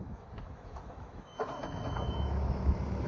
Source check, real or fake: fake